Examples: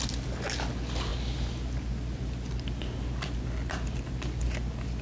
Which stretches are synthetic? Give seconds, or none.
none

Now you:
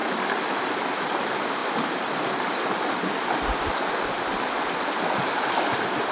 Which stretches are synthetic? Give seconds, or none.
none

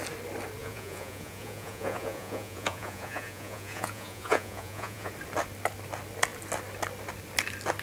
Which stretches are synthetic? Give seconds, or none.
0.6-5.1 (vocoder, Vocos)

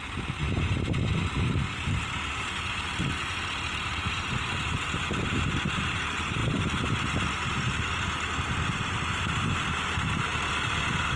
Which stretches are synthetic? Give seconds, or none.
none

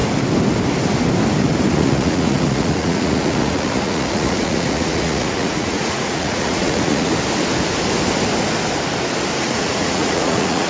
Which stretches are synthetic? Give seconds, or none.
1.7-7.1 (vocoder, Vocos); 9.4-10.7

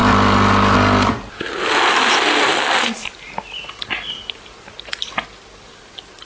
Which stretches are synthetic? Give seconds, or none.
none

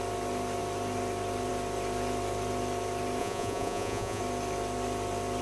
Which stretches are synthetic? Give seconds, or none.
3.2-4.2 (vocoder, Vocos)

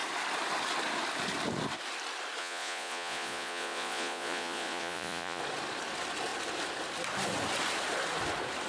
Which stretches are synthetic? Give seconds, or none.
2.4-5.4 (vocoder, Vocos)